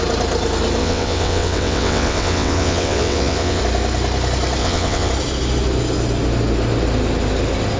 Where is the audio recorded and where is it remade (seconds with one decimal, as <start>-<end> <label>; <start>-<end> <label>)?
0.0-0.8 recorded; 0.8-3.6 remade; 3.6-4.6 recorded; 4.6-5.1 remade; 5.1-7.8 recorded